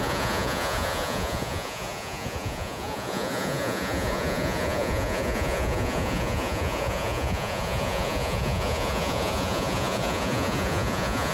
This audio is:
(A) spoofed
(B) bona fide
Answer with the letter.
A